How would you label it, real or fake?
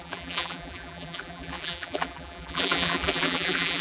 fake